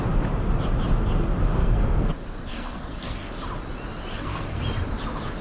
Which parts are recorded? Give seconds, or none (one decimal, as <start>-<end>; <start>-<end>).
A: 0.0-1.6; 2.1-2.5; 3.3-4.1; 4.6-5.4